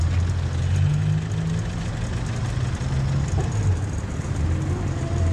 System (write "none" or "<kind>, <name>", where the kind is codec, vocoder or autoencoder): none